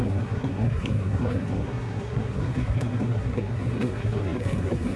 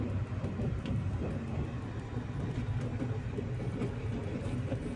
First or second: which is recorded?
second